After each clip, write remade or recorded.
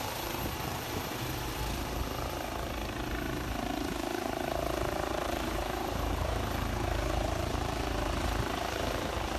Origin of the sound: remade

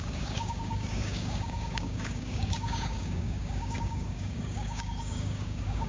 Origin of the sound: remade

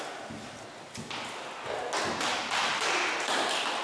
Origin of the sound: recorded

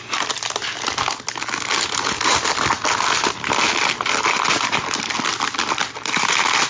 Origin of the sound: recorded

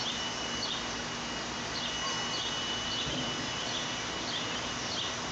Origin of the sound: recorded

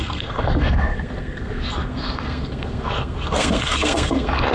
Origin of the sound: remade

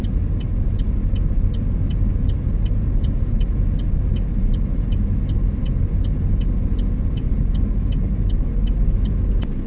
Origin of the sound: recorded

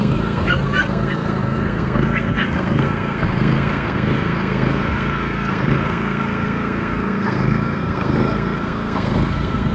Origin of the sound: remade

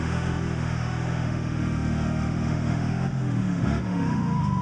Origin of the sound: remade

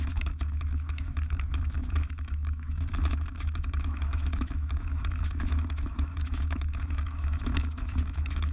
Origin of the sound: remade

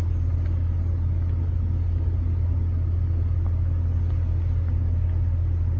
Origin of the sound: recorded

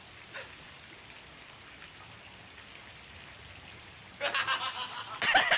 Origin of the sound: recorded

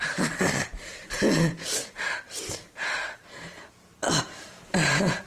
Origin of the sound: remade